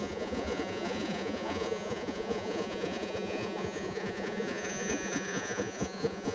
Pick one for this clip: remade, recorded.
remade